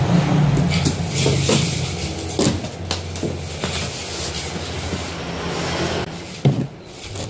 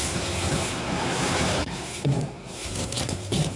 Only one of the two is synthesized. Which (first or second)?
second